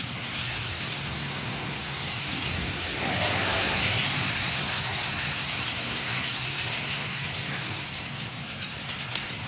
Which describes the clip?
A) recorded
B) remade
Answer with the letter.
B